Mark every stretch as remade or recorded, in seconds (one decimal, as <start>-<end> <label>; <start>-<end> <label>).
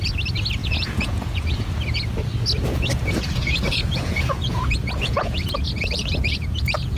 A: 0.0-0.6 recorded; 0.6-1.7 remade; 1.7-2.7 recorded; 2.7-7.0 remade